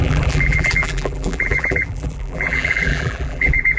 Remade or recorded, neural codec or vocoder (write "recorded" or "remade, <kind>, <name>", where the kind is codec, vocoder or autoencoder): remade, vocoder, BigVGAN v2